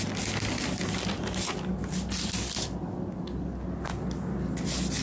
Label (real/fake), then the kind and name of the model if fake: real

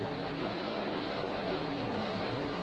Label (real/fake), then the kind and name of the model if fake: fake, codec, SNAC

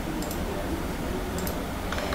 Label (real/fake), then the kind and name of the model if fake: real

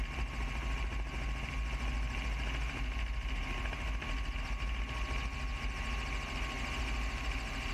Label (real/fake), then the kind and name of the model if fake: real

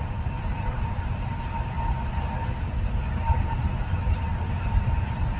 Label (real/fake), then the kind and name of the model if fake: real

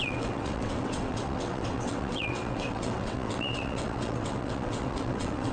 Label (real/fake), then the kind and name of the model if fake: fake, vocoder, WaveNeXt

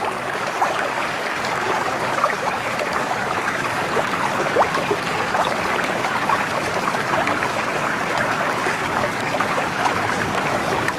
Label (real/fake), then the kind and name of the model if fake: fake, codec, DAC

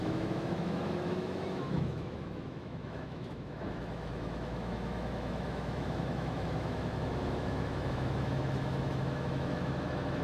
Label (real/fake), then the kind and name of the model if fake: fake, autoencoder, DAC-VAE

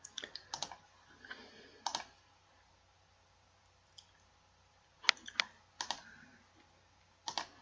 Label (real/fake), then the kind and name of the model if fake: real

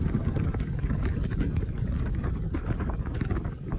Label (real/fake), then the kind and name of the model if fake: fake, codec, DAC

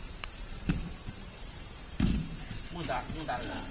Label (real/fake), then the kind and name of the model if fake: fake, vocoder, BigVGAN v2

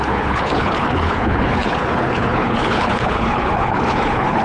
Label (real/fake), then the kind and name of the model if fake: fake, codec, HILCodec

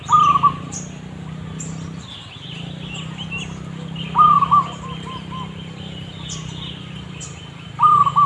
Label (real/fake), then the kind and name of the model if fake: real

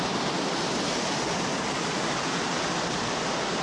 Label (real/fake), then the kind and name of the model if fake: real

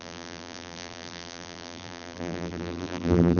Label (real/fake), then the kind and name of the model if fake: fake, vocoder, BigVGAN v2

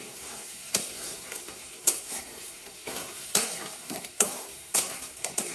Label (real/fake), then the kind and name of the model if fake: fake, codec, SNAC